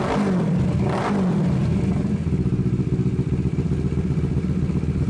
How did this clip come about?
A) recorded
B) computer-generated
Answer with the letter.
A